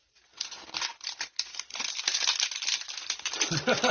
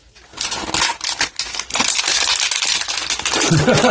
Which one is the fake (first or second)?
first